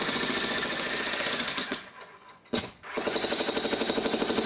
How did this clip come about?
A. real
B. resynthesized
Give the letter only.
B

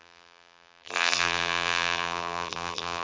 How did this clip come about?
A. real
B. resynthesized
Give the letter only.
B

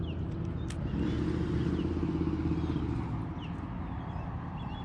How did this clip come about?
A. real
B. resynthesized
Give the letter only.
A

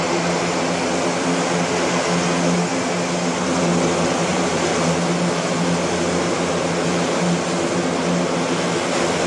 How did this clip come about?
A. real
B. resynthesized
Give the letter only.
A